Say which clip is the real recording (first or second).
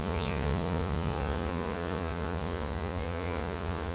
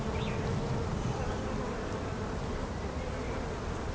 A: second